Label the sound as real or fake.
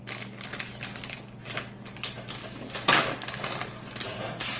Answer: real